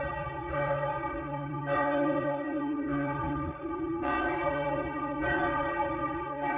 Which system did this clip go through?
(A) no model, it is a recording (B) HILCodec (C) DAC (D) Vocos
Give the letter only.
D